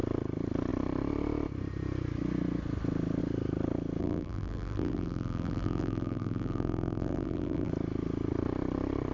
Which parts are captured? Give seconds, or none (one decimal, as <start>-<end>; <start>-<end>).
0.0-4.0; 7.7-9.1